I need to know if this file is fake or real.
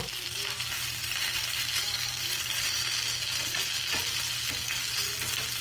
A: real